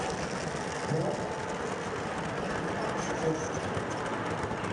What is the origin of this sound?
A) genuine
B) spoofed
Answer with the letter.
A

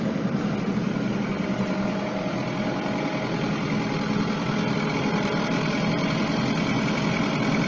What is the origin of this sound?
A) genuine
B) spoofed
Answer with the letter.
A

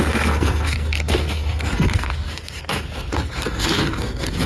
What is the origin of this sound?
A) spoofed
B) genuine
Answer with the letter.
A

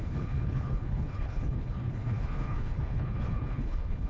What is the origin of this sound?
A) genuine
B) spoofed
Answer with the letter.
B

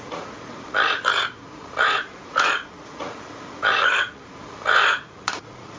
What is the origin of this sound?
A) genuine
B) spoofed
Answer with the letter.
B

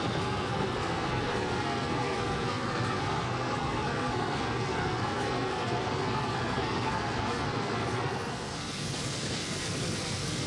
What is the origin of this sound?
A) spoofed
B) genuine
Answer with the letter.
A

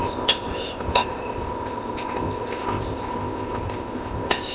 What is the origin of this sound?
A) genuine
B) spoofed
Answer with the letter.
B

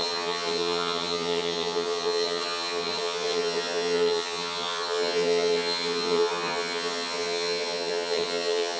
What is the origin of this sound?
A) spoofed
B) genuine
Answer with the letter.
A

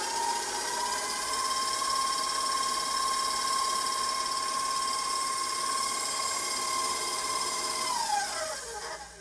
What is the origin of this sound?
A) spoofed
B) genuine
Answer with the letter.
B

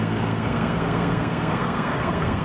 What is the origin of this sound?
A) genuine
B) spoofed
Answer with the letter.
B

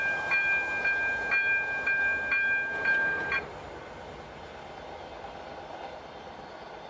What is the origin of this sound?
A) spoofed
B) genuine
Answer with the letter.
B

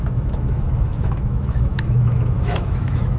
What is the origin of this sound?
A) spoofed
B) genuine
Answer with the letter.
A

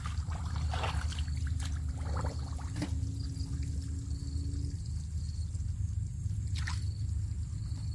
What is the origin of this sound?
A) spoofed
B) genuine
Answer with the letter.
B